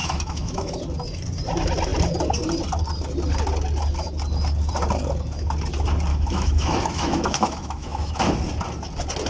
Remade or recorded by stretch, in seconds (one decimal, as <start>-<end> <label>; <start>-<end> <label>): 0.0-0.8 remade; 0.8-6.1 recorded; 6.1-8.3 remade; 8.3-9.3 recorded